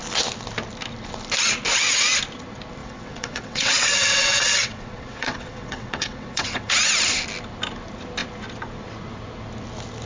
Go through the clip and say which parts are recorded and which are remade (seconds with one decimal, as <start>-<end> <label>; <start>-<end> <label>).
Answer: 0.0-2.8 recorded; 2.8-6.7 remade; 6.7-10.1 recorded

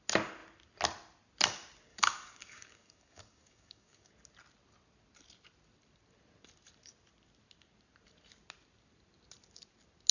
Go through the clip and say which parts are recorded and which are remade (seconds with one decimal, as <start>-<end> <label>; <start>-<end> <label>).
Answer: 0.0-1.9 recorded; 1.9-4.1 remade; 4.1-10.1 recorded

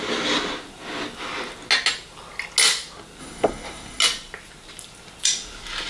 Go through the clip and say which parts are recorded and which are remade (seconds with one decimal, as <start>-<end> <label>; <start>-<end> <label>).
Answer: 0.0-3.2 recorded; 3.2-4.0 remade; 4.0-5.9 recorded